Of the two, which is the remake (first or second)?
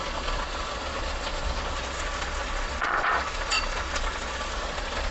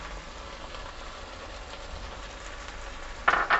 first